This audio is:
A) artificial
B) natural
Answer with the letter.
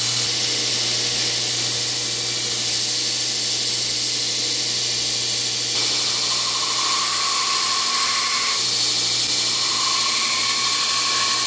B